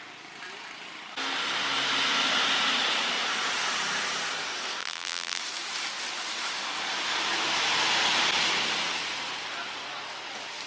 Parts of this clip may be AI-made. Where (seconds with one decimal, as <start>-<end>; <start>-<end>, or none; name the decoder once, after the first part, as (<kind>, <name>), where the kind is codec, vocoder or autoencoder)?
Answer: 4.8-5.4 (vocoder, BigVGAN v2)